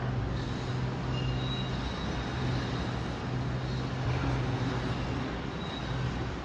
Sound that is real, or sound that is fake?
real